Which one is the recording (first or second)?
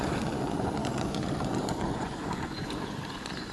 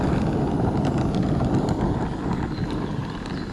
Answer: second